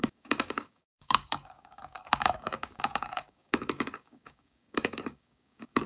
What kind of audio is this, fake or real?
fake